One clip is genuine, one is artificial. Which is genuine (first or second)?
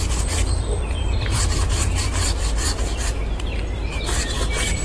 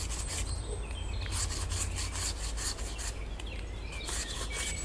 second